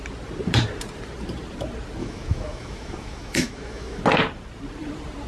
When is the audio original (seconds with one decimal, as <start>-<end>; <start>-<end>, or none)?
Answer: 0.0-2.0; 4.0-5.3